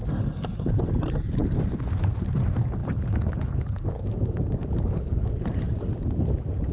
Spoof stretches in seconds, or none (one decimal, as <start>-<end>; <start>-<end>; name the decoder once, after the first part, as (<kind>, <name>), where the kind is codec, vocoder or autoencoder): 2.8-5.4 (codec, DAC)